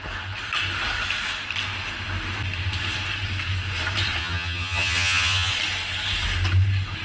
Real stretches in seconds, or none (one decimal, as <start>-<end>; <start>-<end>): 0.0-4.2; 5.5-7.0